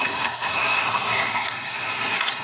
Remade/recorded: remade